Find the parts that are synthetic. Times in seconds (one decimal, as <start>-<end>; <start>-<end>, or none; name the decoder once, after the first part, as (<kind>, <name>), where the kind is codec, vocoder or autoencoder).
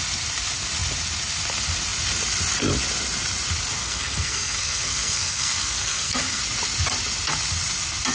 3.8-6.4 (codec, SNAC)